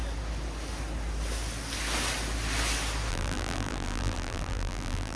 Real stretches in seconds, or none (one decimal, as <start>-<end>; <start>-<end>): 0.0-3.1

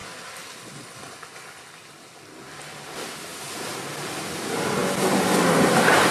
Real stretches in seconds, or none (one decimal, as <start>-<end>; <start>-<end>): 0.0-6.1

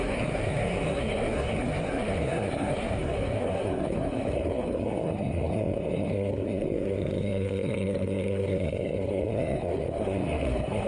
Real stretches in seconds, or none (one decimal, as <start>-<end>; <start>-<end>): none

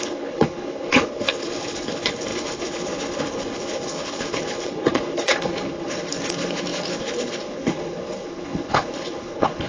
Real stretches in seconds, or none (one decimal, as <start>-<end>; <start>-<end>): none

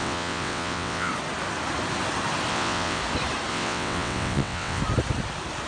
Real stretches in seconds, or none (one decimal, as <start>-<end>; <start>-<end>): 1.1-2.5; 3.0-3.5; 4.8-5.7